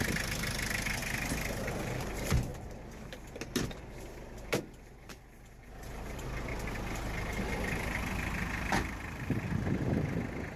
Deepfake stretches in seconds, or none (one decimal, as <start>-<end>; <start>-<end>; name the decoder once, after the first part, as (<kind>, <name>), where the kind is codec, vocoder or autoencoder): 0.0-1.0 (vocoder, BigVGAN v2); 1.6-6.5; 8.1-10.6